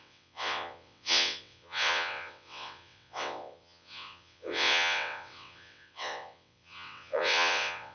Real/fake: fake